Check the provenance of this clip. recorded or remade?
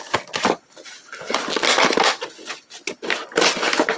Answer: recorded